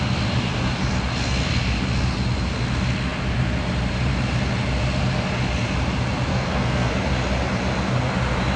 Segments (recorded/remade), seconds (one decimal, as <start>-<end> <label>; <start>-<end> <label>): 0.0-6.3 recorded; 6.3-6.9 remade; 6.9-8.6 recorded